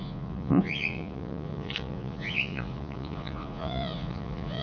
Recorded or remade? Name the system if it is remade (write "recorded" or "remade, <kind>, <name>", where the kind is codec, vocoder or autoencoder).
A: remade, vocoder, Vocos